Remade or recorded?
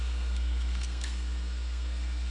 remade